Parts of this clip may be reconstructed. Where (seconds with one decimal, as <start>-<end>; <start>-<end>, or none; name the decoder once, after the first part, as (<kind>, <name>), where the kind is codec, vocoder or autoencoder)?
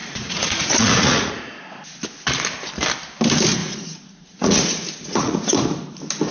0.0-1.3 (vocoder, Vocos); 3.6-5.6